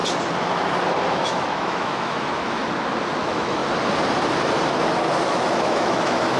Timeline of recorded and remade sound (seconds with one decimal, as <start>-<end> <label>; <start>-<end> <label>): 0.0-1.1 recorded; 1.1-2.6 remade; 2.6-3.2 recorded; 3.2-3.6 remade; 3.6-5.1 recorded; 5.1-6.4 remade